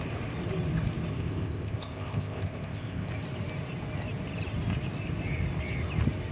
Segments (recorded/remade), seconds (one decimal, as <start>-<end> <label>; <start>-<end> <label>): 0.0-1.1 recorded; 1.1-3.1 remade; 3.1-6.3 recorded